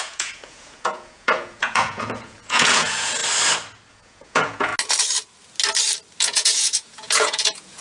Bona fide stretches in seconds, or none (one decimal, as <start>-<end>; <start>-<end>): 3.2-3.9; 4.7-6.2